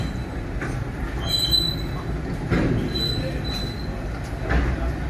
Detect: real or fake real